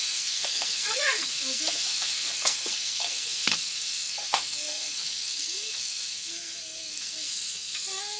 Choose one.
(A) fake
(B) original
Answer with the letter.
A